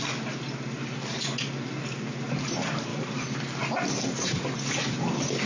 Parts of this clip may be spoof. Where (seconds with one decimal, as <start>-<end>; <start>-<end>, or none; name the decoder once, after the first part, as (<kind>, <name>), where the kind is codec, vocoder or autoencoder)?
none